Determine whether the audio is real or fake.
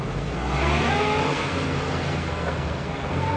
fake